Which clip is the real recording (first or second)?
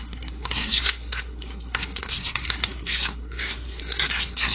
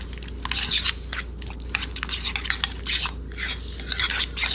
second